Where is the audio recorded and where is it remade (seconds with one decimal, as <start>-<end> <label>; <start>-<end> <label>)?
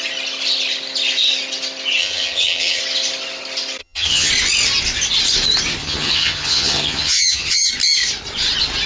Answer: 0.0-2.0 recorded; 2.0-2.8 remade; 2.8-3.8 recorded; 3.8-4.3 remade; 4.3-5.8 recorded; 5.8-7.7 remade; 7.7-8.9 recorded